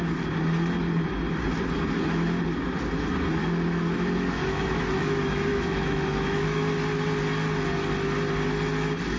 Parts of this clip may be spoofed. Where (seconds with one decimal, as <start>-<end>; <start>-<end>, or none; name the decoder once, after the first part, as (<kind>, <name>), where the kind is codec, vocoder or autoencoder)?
3.4-6.7 (autoencoder, DAC-VAE)